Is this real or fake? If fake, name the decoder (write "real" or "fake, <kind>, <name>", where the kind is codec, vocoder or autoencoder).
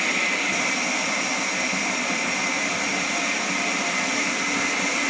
real